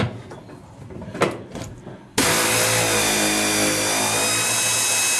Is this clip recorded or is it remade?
recorded